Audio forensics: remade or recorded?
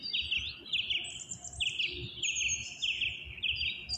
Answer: recorded